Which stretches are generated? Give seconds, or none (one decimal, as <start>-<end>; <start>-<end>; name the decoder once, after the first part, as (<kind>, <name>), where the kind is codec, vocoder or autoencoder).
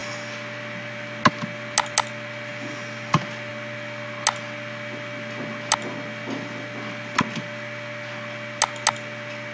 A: none